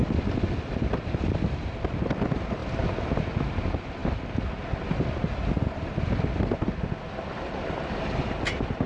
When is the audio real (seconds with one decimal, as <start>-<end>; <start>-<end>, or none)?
0.0-1.4; 2.6-3.2